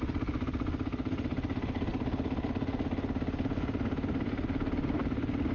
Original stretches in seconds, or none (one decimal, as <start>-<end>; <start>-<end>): 0.0-5.5